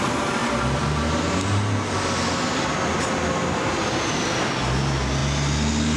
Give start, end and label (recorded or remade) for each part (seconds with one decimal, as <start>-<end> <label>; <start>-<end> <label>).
0.0-6.0 recorded

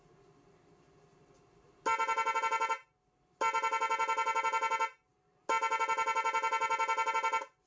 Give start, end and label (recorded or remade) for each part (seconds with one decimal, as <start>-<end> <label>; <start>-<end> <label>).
0.0-7.7 recorded

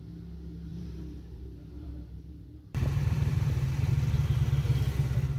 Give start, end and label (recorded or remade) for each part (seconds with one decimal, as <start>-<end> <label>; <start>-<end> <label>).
0.0-0.7 recorded; 0.7-3.9 remade; 3.9-5.4 recorded

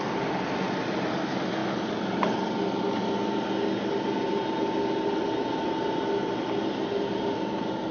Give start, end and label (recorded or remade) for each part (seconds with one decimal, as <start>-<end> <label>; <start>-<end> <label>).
0.0-7.9 recorded

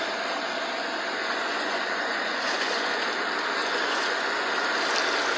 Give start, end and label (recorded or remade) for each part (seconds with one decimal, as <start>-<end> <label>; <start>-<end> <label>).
0.0-1.2 recorded; 1.2-3.1 remade; 3.1-3.6 recorded; 3.6-4.5 remade; 4.5-5.4 recorded

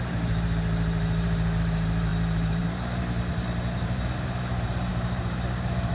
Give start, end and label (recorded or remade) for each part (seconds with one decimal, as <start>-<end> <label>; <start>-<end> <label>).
0.0-5.9 remade

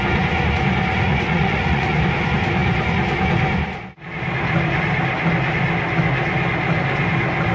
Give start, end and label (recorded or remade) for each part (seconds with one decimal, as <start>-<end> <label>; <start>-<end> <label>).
0.0-1.1 recorded; 1.1-2.0 remade; 2.0-7.5 recorded